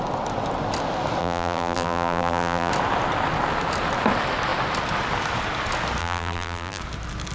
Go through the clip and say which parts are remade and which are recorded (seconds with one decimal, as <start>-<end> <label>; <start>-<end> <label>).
0.0-1.2 recorded; 1.2-2.7 remade; 2.7-6.0 recorded; 6.0-6.8 remade; 6.8-7.3 recorded